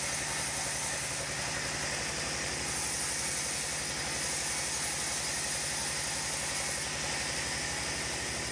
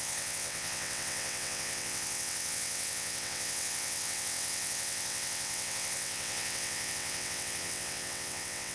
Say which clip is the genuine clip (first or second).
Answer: first